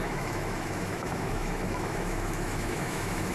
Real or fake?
fake